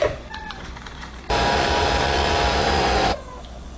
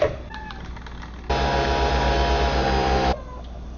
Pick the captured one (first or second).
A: second